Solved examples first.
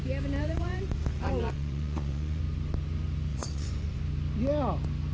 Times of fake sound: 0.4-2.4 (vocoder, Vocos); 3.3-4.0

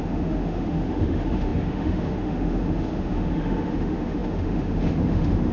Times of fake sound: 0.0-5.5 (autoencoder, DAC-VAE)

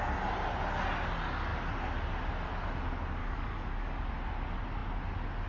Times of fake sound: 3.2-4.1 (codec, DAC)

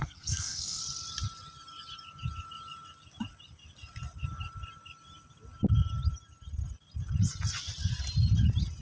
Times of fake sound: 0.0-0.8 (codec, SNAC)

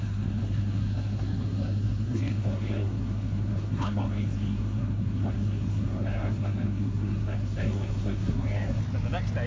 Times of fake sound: 0.0-8.8 (codec, SNAC)